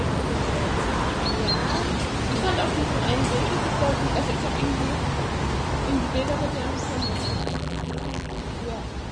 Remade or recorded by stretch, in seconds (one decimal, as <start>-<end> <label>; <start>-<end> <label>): 0.0-7.4 recorded; 7.4-8.4 remade; 8.4-9.1 recorded